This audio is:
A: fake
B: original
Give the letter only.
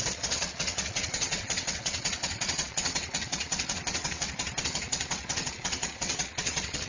A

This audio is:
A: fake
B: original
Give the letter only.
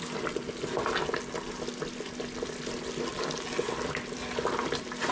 B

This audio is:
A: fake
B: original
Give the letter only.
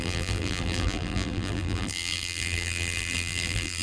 A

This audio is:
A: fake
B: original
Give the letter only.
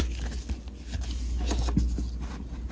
B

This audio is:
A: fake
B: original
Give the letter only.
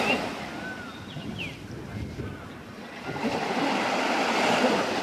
B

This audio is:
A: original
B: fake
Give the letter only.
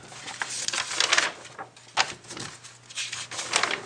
A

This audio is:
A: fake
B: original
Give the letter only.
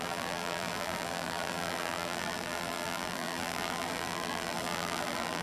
A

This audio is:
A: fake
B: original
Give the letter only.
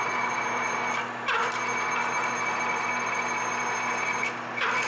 B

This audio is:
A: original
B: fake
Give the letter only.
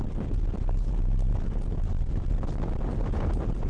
A